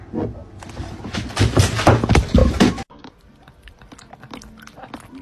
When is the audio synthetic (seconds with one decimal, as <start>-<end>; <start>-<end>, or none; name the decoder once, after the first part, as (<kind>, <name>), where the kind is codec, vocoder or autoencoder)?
2.4-3.7 (vocoder, BigVGAN v2)

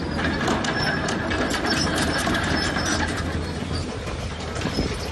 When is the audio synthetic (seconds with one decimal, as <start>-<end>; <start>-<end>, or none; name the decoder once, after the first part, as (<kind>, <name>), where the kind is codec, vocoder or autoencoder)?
1.5-4.3 (vocoder, BigVGAN v2)

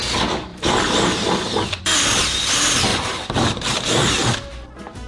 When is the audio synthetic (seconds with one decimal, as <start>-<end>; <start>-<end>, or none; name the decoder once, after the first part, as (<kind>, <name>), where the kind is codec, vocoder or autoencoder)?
0.5-1.8 (vocoder, BigVGAN v2); 2.9-5.1

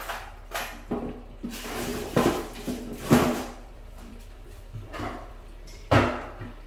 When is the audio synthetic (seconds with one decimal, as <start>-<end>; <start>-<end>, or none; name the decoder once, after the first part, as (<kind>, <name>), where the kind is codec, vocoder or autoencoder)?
1.9-5.9 (vocoder, BigVGAN v2)

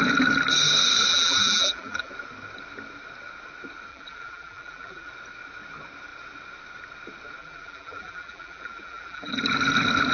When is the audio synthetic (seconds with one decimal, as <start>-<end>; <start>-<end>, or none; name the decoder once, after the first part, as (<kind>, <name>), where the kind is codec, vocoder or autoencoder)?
1.1-2.1 (vocoder, BigVGAN v2); 3.9-5.1; 7.4-9.3

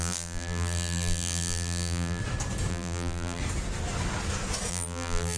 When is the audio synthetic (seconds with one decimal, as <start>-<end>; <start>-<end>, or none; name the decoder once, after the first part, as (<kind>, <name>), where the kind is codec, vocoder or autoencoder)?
0.0-2.2 (vocoder, BigVGAN v2); 2.7-3.4; 4.7-5.4

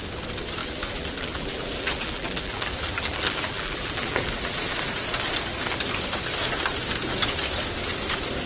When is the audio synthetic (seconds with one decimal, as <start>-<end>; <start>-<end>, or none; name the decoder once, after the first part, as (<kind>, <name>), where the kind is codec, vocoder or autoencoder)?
0.6-4.6 (vocoder, BigVGAN v2)